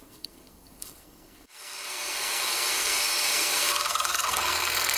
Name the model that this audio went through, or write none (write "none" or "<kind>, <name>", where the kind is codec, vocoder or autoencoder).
codec, SNAC